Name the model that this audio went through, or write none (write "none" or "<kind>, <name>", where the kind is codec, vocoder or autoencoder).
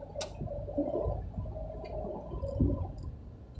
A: none